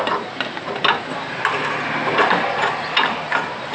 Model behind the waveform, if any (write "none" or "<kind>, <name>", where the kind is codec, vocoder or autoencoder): none